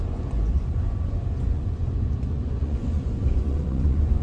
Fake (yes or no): yes